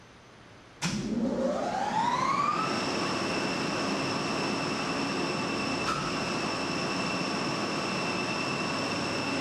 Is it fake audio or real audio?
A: fake